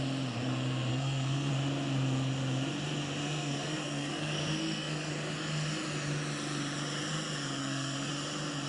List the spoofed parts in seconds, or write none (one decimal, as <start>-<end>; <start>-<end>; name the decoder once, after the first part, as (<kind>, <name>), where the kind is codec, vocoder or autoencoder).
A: 0.9-1.5 (codec, SNAC); 3.2-5.1; 7.6-8.1